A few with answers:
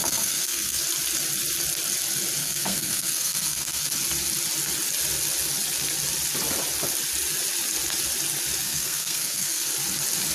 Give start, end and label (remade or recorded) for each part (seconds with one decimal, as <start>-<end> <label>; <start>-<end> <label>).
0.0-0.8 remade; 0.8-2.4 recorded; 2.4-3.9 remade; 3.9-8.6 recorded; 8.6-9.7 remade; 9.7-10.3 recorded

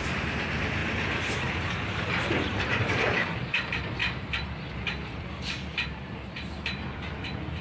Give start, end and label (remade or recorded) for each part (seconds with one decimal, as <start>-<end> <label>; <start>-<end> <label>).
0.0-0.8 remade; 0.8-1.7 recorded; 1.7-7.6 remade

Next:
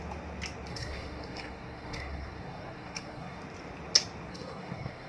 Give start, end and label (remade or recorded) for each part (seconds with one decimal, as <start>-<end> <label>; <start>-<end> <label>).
0.0-0.7 recorded; 0.7-3.4 remade; 3.4-4.3 recorded; 4.3-5.1 remade

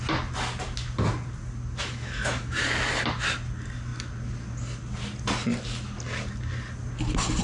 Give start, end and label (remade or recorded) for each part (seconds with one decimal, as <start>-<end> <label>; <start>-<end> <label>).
0.0-1.8 recorded; 1.8-2.6 remade; 2.6-7.4 recorded

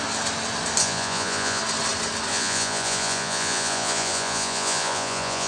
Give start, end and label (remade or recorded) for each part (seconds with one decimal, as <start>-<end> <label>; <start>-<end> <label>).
0.0-0.8 recorded; 0.8-1.6 remade; 1.6-2.3 recorded; 2.3-5.5 remade

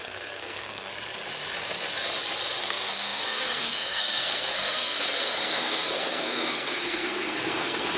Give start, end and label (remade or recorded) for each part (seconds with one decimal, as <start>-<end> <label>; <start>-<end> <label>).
0.0-0.9 remade; 0.9-2.6 recorded; 2.6-8.0 remade